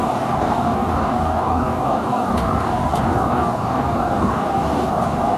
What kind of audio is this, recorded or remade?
remade